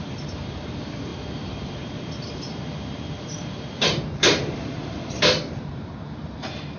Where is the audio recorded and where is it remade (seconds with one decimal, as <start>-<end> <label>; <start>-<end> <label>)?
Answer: 0.0-5.7 remade; 5.7-6.2 recorded; 6.2-6.8 remade

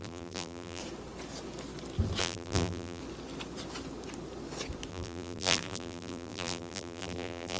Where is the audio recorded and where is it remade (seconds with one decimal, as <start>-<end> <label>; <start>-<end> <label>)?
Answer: 0.0-0.8 remade; 0.8-2.2 recorded; 2.2-3.0 remade; 3.0-4.9 recorded; 4.9-7.6 remade

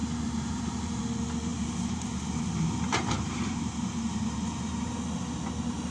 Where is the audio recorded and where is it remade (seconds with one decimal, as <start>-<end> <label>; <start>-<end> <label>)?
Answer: 0.0-1.0 remade; 1.0-1.5 recorded; 1.5-5.0 remade; 5.0-5.9 recorded

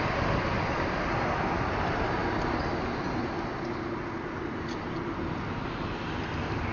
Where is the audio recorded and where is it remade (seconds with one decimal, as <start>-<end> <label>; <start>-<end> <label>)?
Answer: 0.0-6.7 recorded

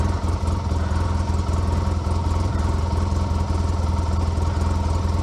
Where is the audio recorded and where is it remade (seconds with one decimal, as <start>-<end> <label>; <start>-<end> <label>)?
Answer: 0.0-2.2 recorded; 2.2-2.8 remade; 2.8-5.2 recorded